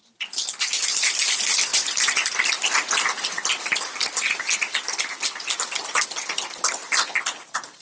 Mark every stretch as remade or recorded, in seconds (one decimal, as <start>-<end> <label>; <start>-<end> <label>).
0.0-1.7 recorded; 1.7-2.8 remade; 2.8-7.8 recorded